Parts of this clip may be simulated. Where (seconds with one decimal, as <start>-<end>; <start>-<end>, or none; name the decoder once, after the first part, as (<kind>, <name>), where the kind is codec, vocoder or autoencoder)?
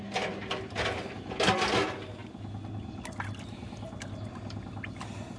none